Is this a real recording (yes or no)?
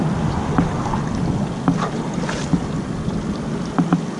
yes